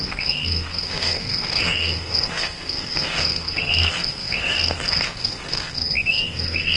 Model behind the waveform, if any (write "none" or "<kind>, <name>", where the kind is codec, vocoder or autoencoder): codec, SNAC